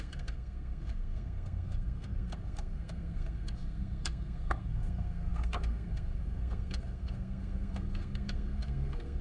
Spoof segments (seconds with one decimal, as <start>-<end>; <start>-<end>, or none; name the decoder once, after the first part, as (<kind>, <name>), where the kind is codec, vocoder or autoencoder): 0.0-9.2 (codec, SNAC)